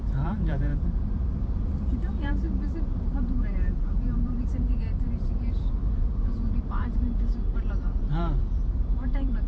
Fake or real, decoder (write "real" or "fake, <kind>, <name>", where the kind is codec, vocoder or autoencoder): fake, vocoder, BigVGAN v2